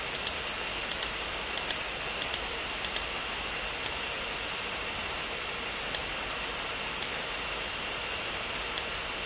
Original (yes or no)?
yes